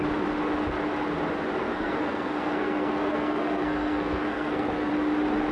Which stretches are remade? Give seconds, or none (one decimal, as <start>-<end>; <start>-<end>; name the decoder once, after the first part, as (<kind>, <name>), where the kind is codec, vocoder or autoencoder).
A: 1.6-4.9 (codec, SNAC)